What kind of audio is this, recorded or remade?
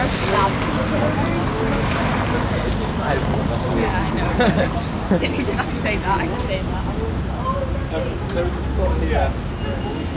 recorded